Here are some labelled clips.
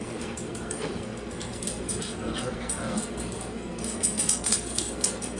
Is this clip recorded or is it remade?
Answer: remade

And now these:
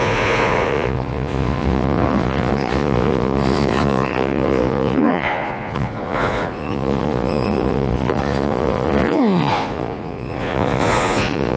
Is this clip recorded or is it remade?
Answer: remade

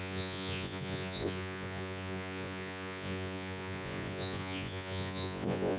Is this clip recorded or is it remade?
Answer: remade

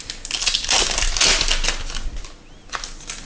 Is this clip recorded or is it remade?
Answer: recorded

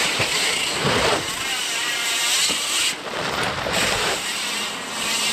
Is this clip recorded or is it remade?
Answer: recorded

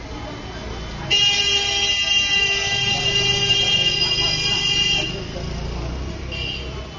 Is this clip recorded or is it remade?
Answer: recorded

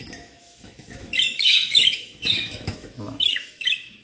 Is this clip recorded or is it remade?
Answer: remade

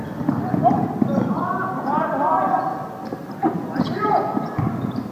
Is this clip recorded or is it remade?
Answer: remade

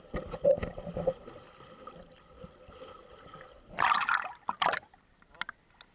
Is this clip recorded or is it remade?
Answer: recorded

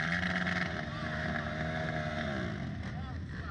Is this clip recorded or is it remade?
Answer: recorded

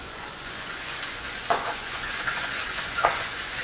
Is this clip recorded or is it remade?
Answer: remade